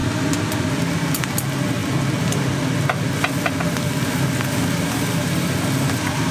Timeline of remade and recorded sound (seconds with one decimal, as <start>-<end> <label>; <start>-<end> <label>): 0.0-6.3 recorded